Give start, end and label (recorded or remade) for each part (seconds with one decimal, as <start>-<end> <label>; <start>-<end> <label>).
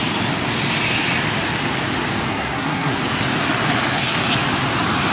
0.0-2.3 recorded; 2.3-3.0 remade; 3.0-5.1 recorded